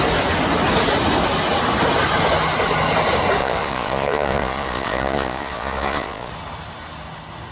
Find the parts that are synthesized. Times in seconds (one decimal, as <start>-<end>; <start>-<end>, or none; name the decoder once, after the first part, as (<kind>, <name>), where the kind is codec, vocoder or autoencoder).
3.4-6.3 (vocoder, Vocos)